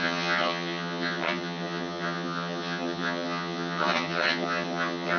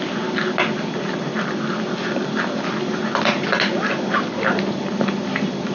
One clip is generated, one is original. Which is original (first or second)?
second